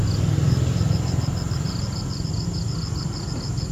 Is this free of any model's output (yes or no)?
yes